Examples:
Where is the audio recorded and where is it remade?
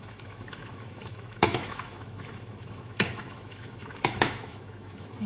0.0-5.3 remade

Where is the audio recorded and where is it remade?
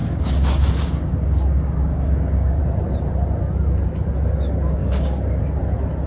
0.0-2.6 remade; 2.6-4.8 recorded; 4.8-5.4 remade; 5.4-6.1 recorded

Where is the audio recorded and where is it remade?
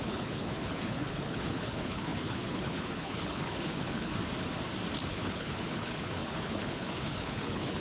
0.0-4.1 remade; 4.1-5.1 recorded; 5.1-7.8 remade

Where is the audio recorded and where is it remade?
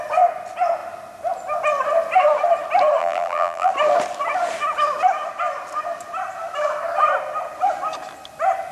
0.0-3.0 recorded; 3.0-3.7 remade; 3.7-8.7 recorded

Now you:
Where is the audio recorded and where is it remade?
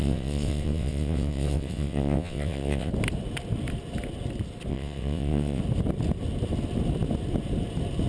0.0-2.9 remade; 2.9-4.7 recorded; 4.7-5.6 remade; 5.6-8.1 recorded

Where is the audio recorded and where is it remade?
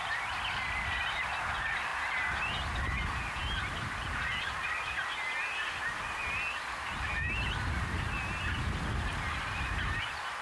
0.0-10.4 recorded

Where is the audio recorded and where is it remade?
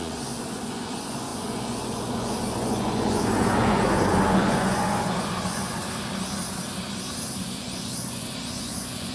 0.0-6.1 remade; 6.1-7.4 recorded; 7.4-9.1 remade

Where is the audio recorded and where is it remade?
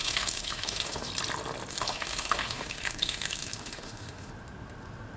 0.0-1.1 remade; 1.1-1.7 recorded; 1.7-4.3 remade; 4.3-5.2 recorded